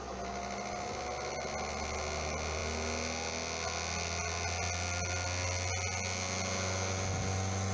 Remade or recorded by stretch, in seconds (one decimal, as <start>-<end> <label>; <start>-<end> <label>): 0.0-7.7 recorded